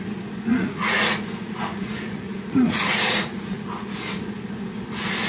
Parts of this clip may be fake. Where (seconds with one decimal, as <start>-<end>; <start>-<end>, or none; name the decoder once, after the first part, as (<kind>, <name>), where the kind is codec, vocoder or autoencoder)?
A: 0.5-3.7 (vocoder, Vocos)